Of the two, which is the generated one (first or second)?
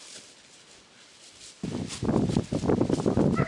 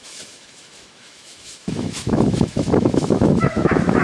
second